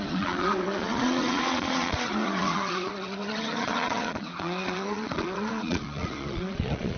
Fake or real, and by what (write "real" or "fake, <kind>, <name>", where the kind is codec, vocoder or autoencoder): fake, vocoder, Vocos